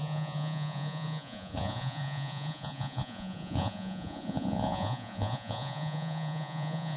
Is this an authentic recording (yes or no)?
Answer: no